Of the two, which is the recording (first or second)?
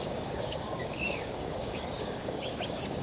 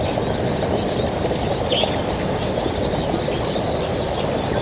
second